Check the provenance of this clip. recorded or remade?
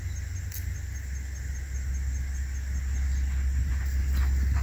recorded